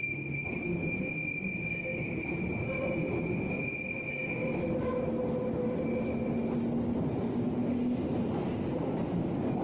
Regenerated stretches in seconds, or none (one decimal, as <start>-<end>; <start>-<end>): none